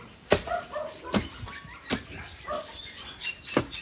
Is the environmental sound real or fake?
real